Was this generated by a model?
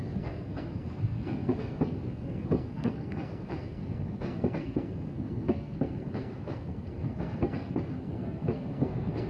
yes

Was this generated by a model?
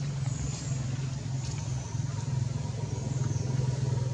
no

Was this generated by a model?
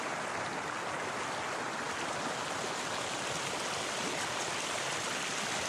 no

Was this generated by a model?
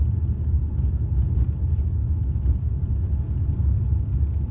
no